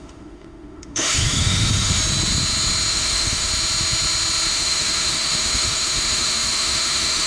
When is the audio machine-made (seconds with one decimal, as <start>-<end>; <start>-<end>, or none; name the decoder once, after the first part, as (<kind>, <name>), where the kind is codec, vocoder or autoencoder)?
0.0-2.0 (autoencoder, DAC-VAE); 2.9-3.5; 4.5-7.3